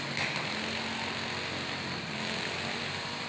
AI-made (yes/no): no